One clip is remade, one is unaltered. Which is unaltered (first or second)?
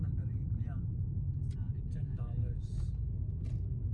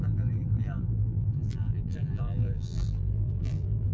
first